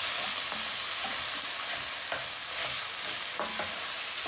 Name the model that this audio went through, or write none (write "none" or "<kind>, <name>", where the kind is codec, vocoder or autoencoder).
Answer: none